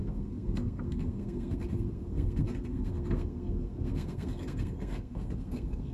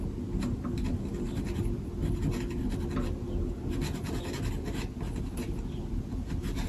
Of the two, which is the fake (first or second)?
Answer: first